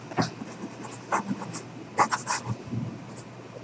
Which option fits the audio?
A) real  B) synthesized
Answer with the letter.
A